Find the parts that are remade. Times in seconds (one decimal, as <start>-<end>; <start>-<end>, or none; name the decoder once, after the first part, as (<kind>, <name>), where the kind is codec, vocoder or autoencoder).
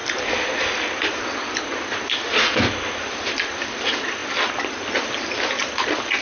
none